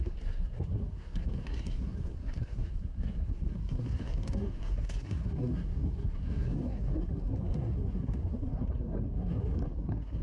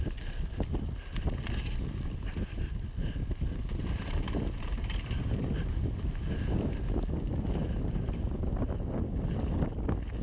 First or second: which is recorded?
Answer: second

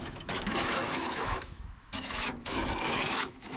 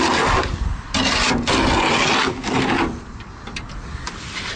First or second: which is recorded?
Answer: second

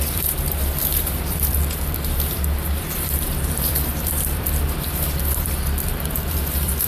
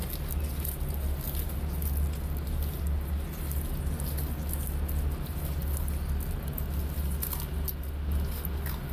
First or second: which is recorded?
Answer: second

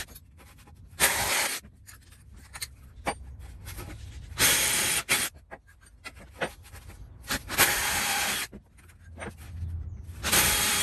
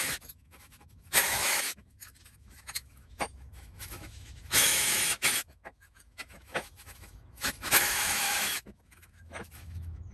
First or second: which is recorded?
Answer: first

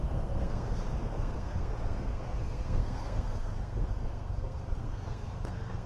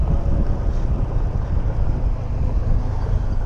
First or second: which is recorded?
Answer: second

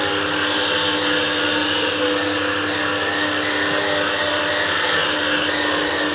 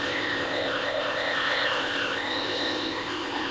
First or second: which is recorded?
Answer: first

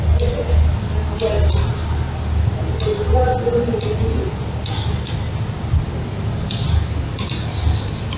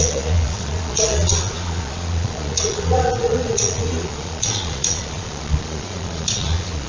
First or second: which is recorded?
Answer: first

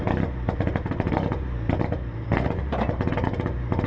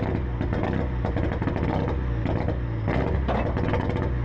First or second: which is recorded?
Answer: second